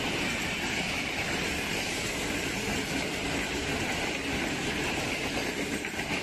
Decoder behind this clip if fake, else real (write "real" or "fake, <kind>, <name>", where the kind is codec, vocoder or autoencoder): real